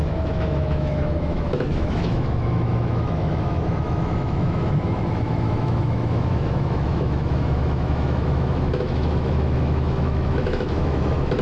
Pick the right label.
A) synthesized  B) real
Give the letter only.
A